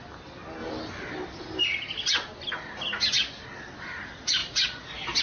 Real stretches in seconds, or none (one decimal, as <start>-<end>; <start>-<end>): 0.0-5.2

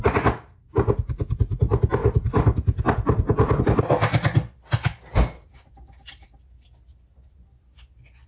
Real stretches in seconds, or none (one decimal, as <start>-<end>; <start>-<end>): 0.0-8.3

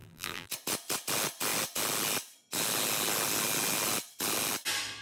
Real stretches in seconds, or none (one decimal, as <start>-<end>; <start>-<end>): 0.5-5.0

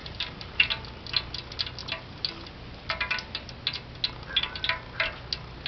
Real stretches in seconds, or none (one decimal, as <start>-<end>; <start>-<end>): 0.7-5.7

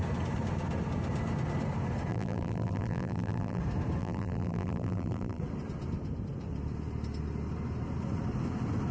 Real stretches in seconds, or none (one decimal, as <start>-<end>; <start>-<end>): 0.0-2.1; 3.6-4.0; 5.4-8.9

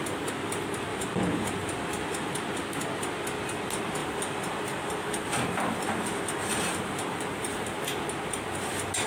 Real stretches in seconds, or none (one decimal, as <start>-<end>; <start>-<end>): 0.0-0.9; 2.3-4.0; 7.8-9.1

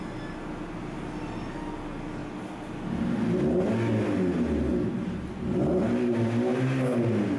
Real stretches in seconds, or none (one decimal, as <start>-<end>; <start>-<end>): 0.0-7.4

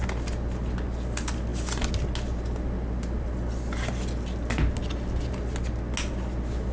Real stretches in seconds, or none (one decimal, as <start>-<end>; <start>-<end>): 0.0-2.8; 3.5-6.7